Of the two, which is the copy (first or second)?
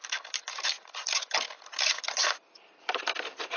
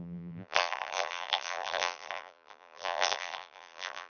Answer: second